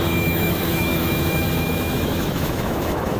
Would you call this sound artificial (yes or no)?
yes